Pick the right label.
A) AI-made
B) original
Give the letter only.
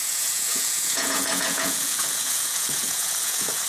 A